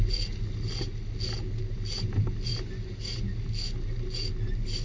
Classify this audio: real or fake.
real